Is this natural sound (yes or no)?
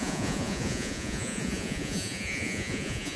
no